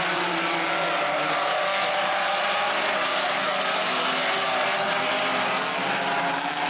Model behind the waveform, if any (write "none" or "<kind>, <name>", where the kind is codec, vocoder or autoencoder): none